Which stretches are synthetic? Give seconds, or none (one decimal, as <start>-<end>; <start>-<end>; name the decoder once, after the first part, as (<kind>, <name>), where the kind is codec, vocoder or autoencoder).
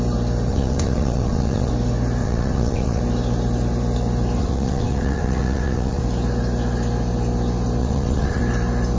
0.5-1.7 (vocoder, WaveNeXt); 2.2-3.0; 4.4-6.0; 7.8-8.4